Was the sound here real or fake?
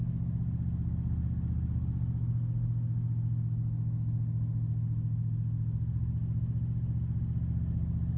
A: real